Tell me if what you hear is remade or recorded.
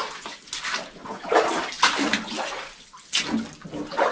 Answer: recorded